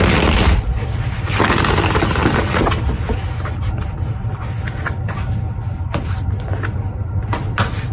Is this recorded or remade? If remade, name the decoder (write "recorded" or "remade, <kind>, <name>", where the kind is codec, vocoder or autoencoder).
recorded